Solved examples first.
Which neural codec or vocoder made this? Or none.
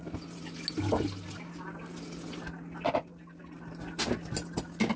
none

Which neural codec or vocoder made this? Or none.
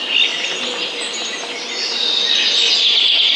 none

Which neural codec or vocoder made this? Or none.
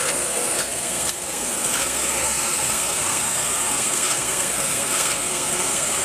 codec, SNAC